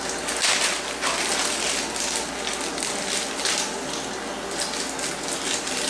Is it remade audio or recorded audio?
recorded